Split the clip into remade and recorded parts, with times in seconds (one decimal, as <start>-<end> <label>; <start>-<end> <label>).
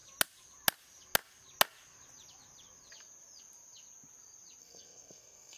0.0-4.6 recorded; 4.6-5.6 remade